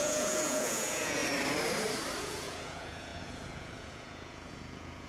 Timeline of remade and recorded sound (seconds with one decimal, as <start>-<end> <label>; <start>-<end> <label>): 0.0-1.2 remade; 1.2-2.2 recorded; 2.2-5.1 remade